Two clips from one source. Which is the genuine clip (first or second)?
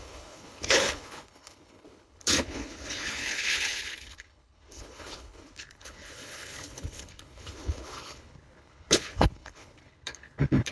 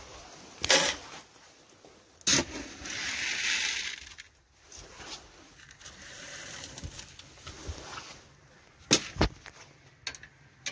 second